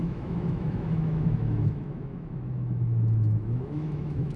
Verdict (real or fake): fake